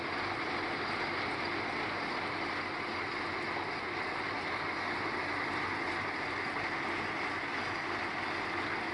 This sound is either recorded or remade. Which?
recorded